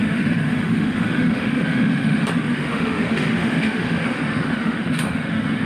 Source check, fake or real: fake